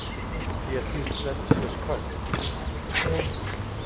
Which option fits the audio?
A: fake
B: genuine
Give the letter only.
B